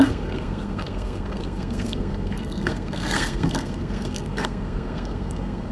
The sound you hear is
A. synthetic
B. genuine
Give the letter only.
A